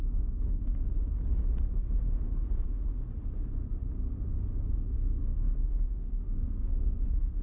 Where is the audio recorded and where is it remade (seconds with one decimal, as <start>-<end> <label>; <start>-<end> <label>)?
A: 0.0-0.9 remade; 0.9-4.7 recorded; 4.7-7.4 remade